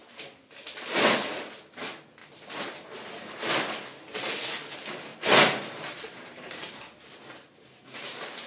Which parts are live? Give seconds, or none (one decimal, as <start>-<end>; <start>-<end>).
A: 0.0-2.2; 3.5-3.9; 4.4-5.1; 6.9-8.5